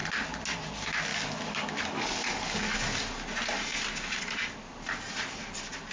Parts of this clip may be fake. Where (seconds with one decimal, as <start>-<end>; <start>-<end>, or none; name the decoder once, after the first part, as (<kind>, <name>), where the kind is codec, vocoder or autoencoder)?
1.1-2.8 (codec, DAC)